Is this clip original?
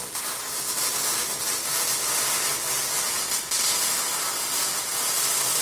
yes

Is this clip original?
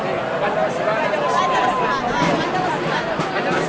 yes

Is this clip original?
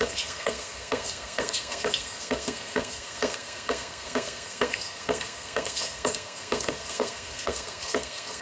no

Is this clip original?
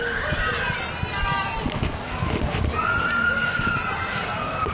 yes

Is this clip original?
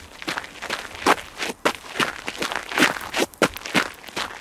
yes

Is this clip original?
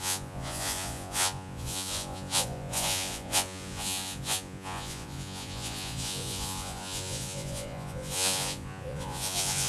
no